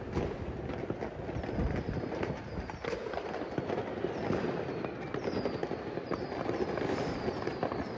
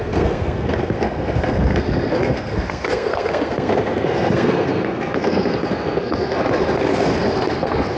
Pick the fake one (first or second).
second